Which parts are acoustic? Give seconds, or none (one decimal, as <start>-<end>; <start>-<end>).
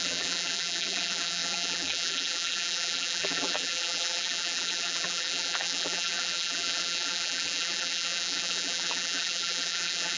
none